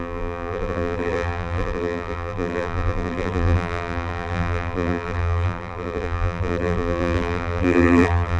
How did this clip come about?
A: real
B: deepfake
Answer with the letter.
B